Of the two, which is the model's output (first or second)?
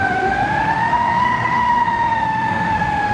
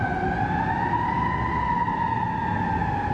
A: first